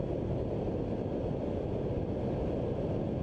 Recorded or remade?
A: recorded